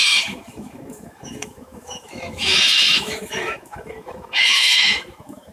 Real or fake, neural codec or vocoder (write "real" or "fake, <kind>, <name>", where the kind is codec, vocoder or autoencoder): fake, autoencoder, DAC-VAE